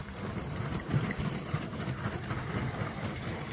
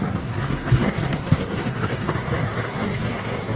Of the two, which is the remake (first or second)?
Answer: second